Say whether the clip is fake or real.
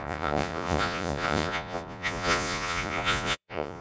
fake